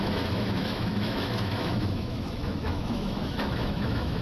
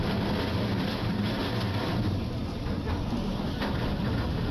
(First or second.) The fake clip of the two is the first